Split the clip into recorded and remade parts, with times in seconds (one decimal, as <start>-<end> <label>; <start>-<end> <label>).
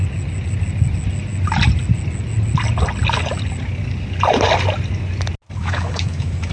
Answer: 0.0-5.6 recorded; 5.6-6.5 remade